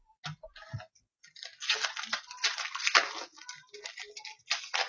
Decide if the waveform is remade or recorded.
recorded